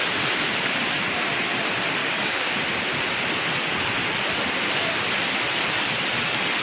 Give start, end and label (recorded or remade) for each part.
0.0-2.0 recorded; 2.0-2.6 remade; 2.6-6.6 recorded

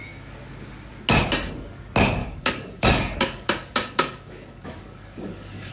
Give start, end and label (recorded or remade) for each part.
0.0-2.2 recorded; 2.2-5.7 remade

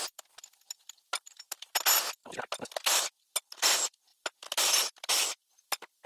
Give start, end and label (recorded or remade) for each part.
0.0-6.1 recorded